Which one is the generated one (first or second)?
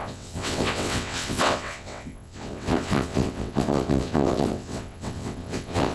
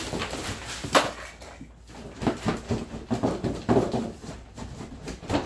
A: first